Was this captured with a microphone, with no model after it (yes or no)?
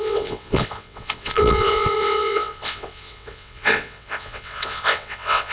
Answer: no